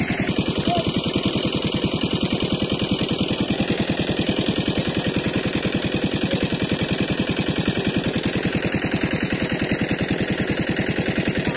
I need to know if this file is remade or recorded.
recorded